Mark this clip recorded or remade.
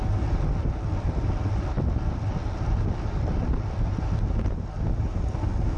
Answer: recorded